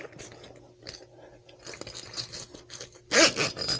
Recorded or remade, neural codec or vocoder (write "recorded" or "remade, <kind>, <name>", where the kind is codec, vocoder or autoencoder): recorded